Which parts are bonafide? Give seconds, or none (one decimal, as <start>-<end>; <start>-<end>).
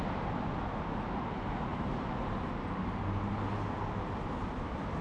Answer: 0.0-1.7; 2.5-5.0